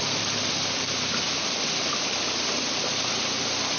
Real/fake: real